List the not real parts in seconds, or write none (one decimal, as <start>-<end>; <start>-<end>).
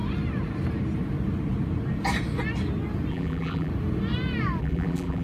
3.1-3.7; 4.6-5.2